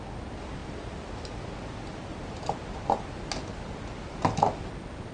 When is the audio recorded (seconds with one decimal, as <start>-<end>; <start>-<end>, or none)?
0.0-5.1